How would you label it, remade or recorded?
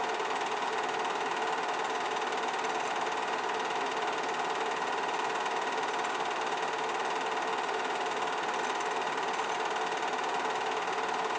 recorded